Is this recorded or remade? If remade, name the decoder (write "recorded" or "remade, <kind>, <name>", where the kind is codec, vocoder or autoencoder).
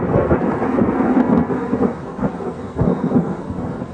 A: remade, codec, SNAC